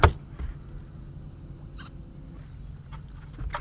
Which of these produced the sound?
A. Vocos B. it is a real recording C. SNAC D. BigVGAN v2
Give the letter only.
B